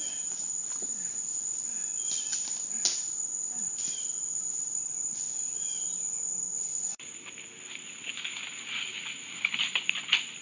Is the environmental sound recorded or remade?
recorded